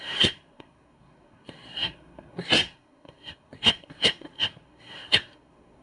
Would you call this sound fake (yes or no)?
yes